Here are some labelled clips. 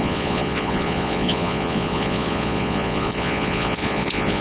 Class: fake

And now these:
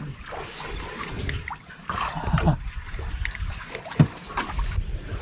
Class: real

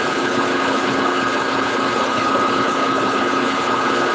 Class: fake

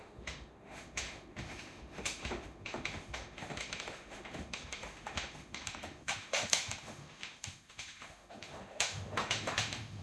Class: fake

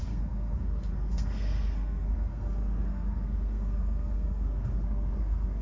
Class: fake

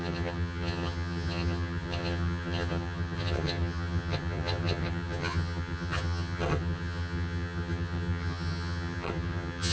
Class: fake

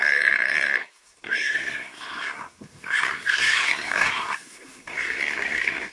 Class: fake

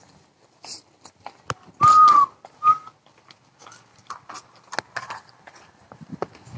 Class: real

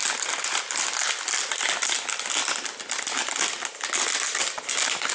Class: real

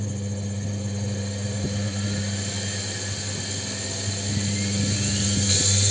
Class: real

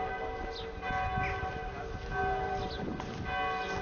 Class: real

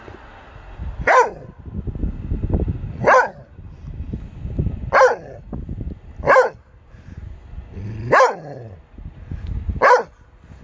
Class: real